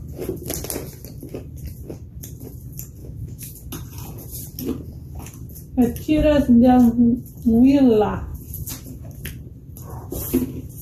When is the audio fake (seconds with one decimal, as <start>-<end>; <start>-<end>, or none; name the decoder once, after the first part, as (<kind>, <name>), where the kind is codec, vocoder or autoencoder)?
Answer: 3.0-3.5 (autoencoder, DAC-VAE)